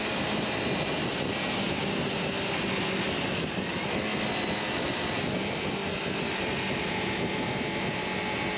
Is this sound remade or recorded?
recorded